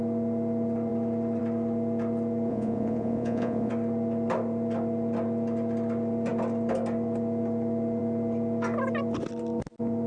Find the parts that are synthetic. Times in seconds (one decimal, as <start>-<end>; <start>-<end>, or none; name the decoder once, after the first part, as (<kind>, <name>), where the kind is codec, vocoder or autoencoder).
2.5-3.7 (vocoder, Vocos)